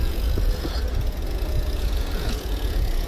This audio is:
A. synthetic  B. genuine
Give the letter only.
A